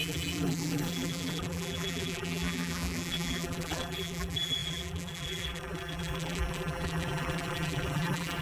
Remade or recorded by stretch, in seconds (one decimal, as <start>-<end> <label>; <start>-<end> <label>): 0.0-8.4 remade